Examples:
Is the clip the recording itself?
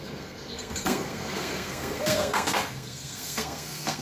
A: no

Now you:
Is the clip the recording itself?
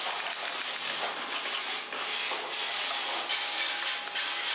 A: yes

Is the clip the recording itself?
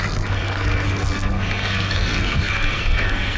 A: no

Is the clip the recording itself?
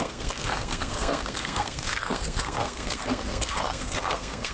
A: no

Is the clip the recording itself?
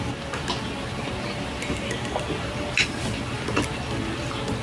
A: yes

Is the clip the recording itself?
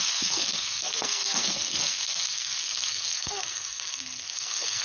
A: no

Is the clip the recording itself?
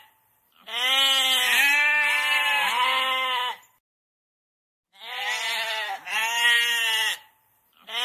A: yes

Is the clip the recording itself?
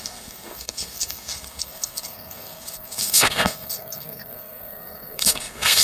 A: no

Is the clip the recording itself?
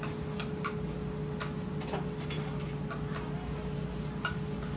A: yes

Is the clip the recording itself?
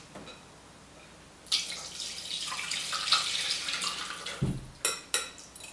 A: yes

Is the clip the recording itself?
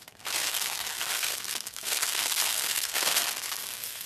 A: no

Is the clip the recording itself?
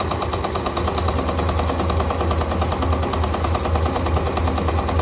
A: yes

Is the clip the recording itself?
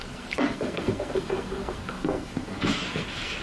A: no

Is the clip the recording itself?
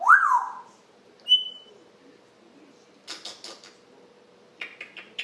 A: yes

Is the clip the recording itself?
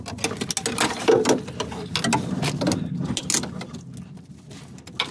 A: yes